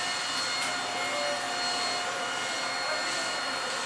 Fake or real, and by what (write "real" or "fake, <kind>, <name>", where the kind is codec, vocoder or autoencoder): real